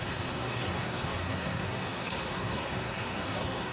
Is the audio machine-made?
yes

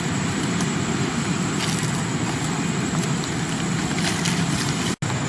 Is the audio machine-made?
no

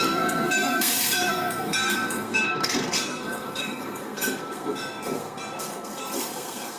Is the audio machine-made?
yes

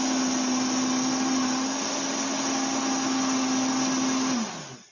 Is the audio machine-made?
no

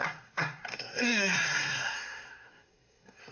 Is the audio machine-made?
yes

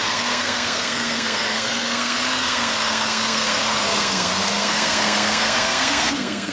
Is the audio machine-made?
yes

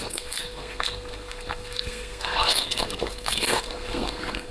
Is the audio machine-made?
yes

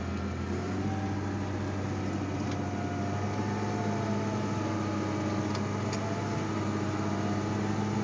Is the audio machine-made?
no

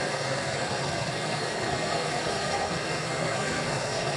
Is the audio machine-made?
yes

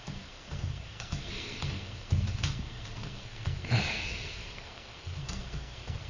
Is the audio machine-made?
yes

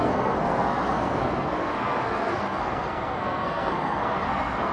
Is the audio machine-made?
yes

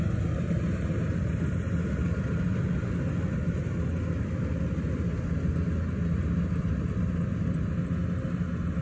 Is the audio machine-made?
no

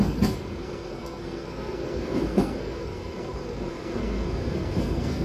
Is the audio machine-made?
yes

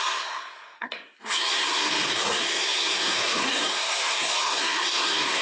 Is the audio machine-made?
yes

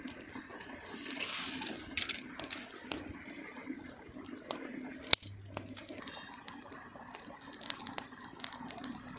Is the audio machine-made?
no